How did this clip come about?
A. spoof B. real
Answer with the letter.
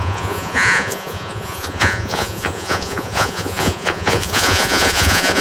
A